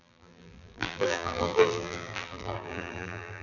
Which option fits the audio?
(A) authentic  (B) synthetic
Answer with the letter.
B